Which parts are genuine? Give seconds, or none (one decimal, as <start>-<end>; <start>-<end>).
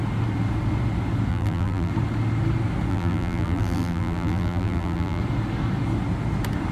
0.0-1.3; 1.9-2.9; 5.2-6.7